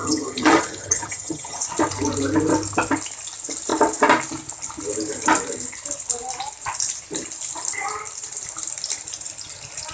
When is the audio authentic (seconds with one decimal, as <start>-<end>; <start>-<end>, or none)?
1.6-9.9